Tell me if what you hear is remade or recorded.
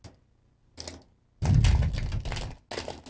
recorded